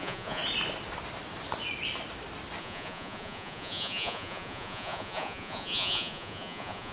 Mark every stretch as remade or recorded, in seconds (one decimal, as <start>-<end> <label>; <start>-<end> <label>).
0.0-0.4 remade; 0.4-2.6 recorded; 2.6-6.9 remade